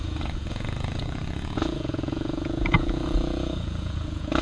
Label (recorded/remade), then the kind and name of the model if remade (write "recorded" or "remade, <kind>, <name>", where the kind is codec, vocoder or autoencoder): remade, vocoder, Vocos